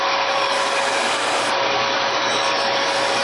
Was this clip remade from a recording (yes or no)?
yes